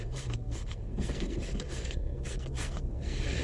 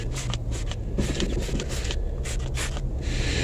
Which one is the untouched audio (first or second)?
second